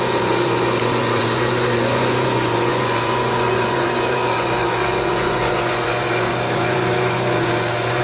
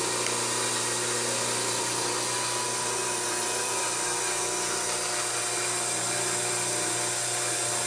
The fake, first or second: first